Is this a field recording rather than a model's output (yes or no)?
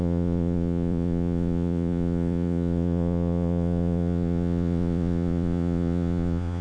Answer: no